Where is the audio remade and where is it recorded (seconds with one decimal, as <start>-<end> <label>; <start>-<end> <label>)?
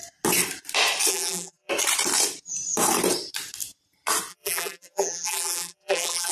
0.0-1.1 recorded; 1.1-1.7 remade; 1.7-4.3 recorded; 4.3-6.3 remade